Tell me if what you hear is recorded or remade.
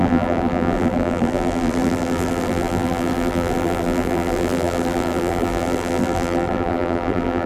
remade